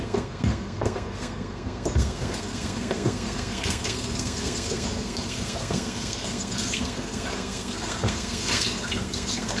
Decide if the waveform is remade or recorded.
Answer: remade